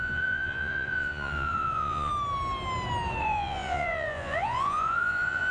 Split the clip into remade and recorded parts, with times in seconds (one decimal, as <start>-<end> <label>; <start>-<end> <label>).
0.0-2.1 remade; 2.1-3.2 recorded; 3.2-5.5 remade